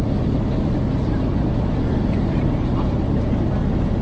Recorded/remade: recorded